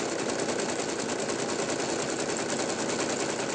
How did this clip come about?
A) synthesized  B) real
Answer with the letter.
B